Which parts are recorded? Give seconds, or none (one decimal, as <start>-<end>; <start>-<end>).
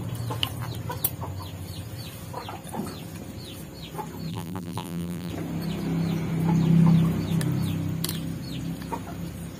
0.0-4.3; 5.3-9.6